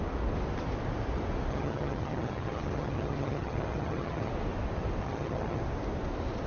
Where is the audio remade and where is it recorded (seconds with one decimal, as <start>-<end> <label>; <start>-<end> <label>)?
0.0-1.5 recorded; 1.5-4.3 remade; 4.3-5.0 recorded; 5.0-5.6 remade; 5.6-6.5 recorded